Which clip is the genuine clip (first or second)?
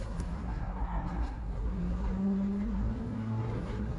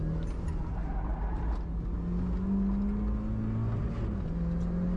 second